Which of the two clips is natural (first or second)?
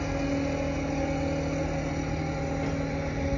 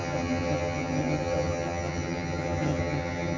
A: first